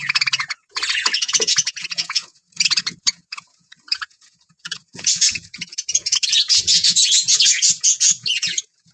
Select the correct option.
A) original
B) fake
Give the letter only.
B